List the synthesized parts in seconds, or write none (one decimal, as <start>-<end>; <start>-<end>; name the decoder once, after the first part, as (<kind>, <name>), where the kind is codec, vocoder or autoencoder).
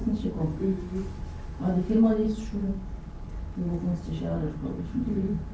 2.6-3.3 (codec, DAC)